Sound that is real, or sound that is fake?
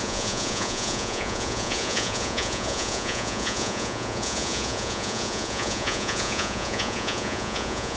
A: fake